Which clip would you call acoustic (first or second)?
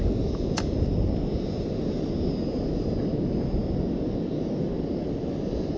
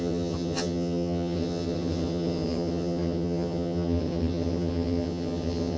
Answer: first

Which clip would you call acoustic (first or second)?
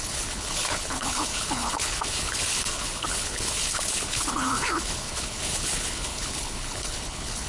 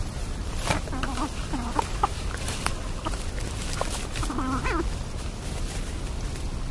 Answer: second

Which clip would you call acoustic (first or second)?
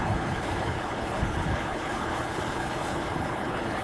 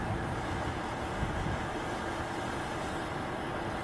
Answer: second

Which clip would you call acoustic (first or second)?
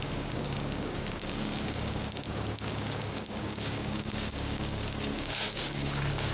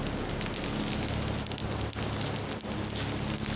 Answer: second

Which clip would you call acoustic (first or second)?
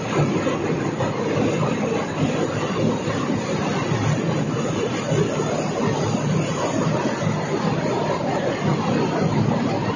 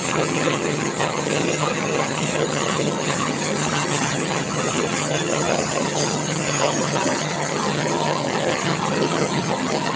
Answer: first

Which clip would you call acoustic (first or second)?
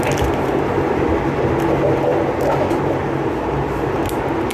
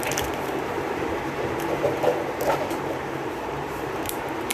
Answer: first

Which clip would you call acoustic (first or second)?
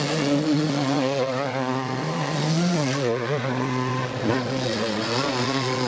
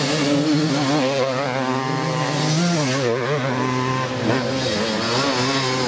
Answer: second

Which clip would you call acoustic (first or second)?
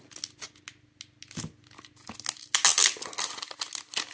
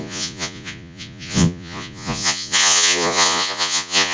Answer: first